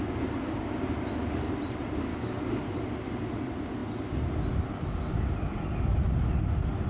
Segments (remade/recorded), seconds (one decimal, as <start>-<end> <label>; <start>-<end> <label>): 0.0-2.1 recorded; 2.1-2.6 remade; 2.6-6.9 recorded